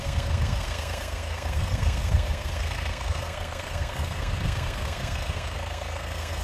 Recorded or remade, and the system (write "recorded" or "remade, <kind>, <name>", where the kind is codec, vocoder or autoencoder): remade, codec, SNAC